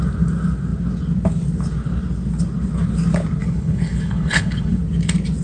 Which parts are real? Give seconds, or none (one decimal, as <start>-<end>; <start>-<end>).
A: 0.0-3.4; 4.8-5.4